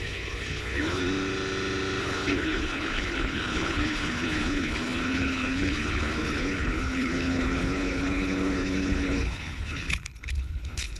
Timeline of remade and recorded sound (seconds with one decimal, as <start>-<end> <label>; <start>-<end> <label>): 0.0-1.0 remade; 1.0-2.0 recorded; 2.0-11.0 remade